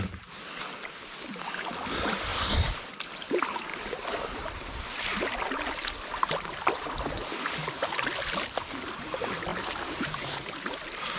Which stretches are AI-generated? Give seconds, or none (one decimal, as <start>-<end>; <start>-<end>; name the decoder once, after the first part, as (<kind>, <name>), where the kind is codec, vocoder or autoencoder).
2.3-2.9 (vocoder, BigVGAN v2); 3.7-5.0; 9.5-11.2